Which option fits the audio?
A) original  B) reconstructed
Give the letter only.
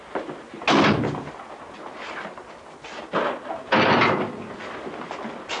A